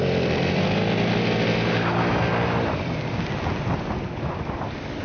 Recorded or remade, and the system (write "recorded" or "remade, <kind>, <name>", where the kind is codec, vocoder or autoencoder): recorded